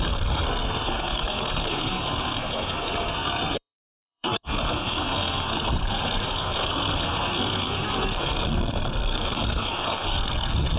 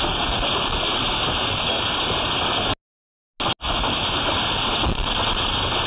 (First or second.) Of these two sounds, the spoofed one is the first